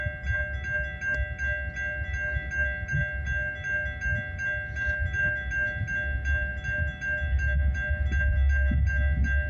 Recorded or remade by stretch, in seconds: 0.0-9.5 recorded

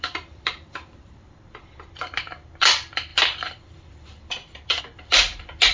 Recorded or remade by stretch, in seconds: 0.0-3.1 recorded; 3.1-4.8 remade; 4.8-5.7 recorded